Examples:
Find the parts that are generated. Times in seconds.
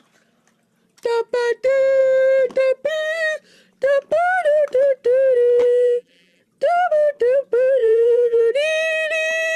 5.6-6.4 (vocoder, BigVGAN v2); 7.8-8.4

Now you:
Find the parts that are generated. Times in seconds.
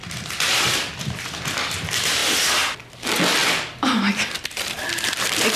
3.4-4.3 (vocoder, BigVGAN v2)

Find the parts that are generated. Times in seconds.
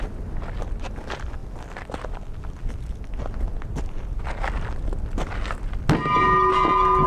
none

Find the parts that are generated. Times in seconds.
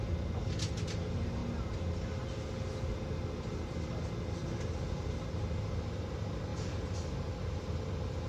none